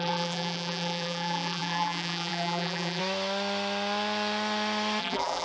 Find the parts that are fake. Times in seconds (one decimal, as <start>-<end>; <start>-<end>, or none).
0.0-3.0; 5.0-5.4